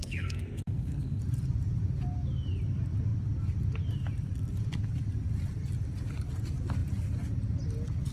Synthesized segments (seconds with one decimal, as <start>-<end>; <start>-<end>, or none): 0.0-1.2